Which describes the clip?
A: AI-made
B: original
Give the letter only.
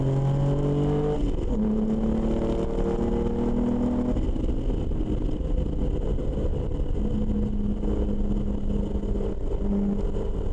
B